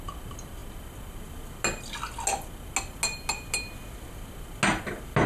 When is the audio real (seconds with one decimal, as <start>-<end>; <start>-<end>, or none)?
0.0-5.3